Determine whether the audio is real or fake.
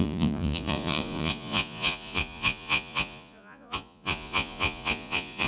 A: fake